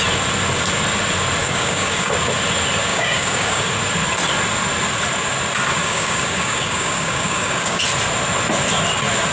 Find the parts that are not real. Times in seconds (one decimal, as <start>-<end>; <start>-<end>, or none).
1.4-2.1; 2.9-3.7; 5.8-7.8

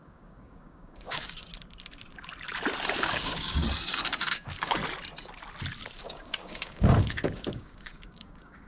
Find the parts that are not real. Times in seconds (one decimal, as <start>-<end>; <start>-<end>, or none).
0.0-1.5; 3.0-3.6; 4.2-4.8; 6.0-8.7

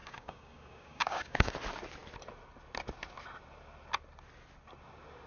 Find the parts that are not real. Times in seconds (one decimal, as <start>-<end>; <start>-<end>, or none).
0.0-1.5

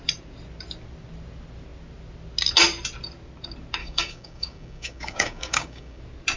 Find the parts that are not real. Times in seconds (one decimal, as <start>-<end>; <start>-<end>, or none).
3.8-6.0

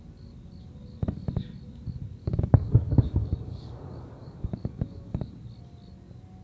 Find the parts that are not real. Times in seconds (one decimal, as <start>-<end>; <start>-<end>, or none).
2.2-5.3